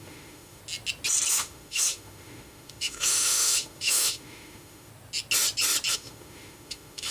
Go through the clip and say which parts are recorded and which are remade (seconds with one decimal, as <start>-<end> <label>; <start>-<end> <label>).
0.0-0.6 remade; 0.6-1.3 recorded; 1.3-4.9 remade; 4.9-5.9 recorded; 5.9-7.1 remade